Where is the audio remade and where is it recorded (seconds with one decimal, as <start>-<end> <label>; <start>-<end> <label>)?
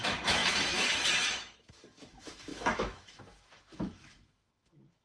0.0-5.0 remade